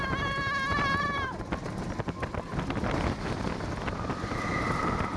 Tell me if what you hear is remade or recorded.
recorded